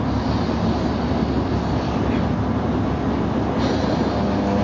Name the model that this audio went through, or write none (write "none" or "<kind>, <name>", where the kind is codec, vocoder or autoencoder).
none